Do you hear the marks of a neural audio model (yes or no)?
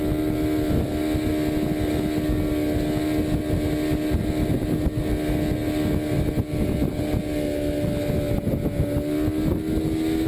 no